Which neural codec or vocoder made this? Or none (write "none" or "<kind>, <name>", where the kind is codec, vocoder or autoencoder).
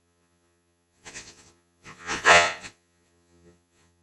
vocoder, Vocos